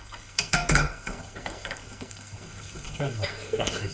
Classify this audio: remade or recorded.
remade